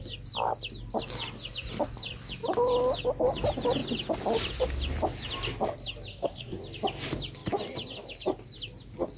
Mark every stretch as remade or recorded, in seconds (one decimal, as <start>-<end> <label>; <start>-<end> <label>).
0.0-6.1 recorded; 6.1-6.6 remade; 6.6-9.2 recorded